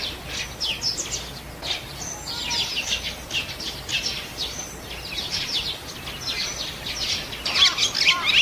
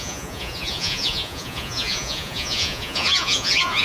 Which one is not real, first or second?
second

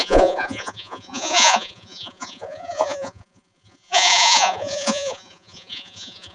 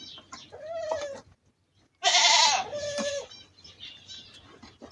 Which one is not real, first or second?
first